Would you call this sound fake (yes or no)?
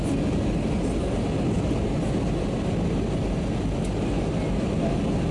no